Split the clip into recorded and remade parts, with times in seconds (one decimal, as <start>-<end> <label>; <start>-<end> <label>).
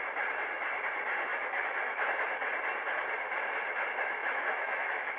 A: 0.0-1.3 recorded; 1.3-2.0 remade; 2.0-4.2 recorded; 4.2-5.2 remade